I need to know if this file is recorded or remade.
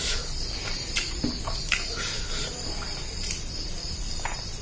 remade